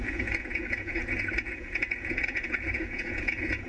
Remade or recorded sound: remade